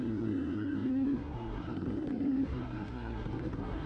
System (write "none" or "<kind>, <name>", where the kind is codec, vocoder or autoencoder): codec, SNAC